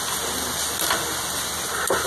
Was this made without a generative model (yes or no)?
yes